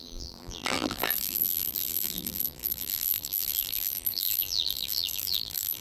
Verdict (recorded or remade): remade